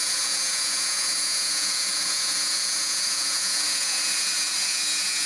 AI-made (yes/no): yes